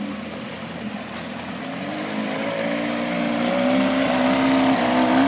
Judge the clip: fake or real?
real